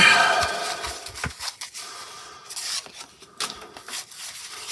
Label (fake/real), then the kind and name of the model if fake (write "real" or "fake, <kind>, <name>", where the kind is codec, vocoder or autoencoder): real